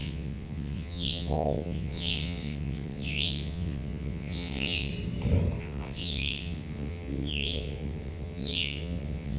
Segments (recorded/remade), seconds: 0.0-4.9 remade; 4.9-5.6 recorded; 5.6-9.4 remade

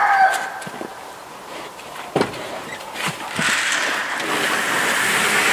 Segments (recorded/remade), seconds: 0.0-0.9 recorded; 0.9-4.2 remade; 4.2-5.5 recorded

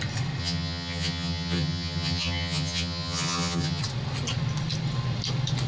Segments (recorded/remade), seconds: 0.0-0.4 recorded; 0.4-3.8 remade; 3.8-5.7 recorded

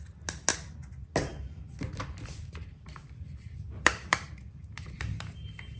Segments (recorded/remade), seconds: 0.0-1.3 recorded; 1.3-4.8 remade; 4.8-5.8 recorded